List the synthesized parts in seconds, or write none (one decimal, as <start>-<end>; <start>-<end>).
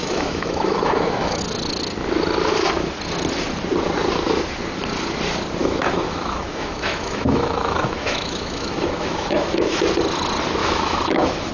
0.0-1.4; 5.6-9.8; 10.6-11.5